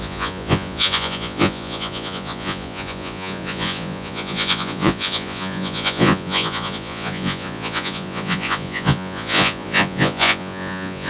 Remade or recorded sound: remade